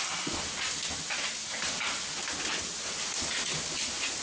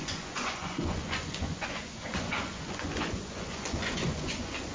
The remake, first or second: second